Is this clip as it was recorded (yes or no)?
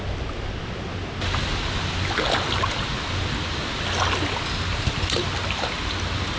yes